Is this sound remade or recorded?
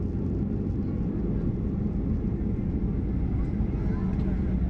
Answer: recorded